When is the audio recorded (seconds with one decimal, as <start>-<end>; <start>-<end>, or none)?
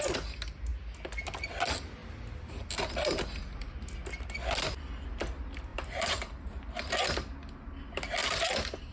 0.0-5.7; 6.5-8.9